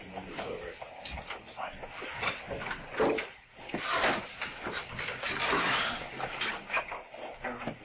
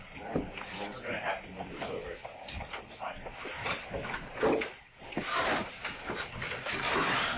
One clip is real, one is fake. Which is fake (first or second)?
second